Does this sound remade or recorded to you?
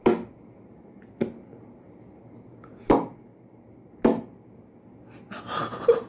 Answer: recorded